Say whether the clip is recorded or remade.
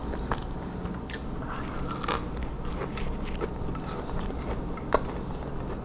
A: recorded